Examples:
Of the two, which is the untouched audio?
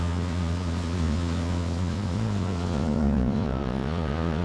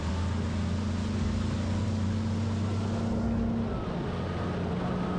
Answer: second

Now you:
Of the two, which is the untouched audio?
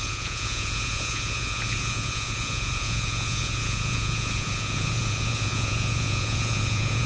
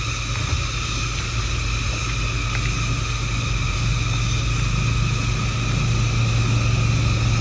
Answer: second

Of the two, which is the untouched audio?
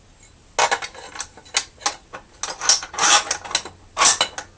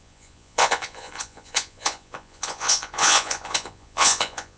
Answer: first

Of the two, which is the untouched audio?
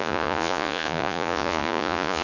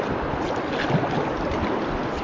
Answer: second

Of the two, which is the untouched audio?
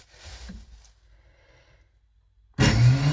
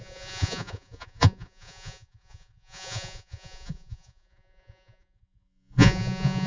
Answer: first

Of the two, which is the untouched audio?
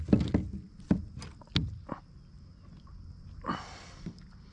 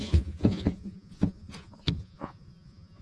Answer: first